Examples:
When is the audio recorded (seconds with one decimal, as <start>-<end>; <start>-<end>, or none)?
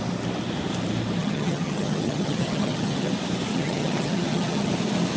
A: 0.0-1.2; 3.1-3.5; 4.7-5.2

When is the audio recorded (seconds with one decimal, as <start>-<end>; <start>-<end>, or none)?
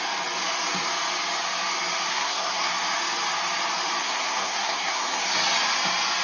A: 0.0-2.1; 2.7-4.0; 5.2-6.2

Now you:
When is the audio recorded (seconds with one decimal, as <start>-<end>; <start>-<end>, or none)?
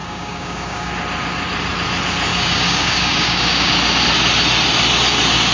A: 0.9-2.3; 3.7-5.5